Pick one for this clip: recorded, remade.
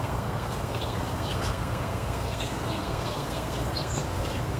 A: remade